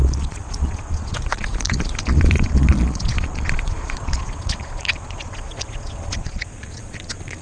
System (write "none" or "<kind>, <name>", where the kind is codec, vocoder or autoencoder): vocoder, Vocos